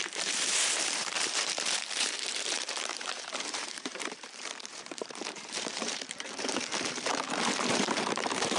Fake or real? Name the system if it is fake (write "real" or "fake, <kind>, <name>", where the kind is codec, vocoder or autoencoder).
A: fake, vocoder, BigVGAN v2